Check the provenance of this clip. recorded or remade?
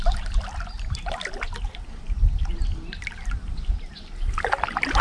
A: recorded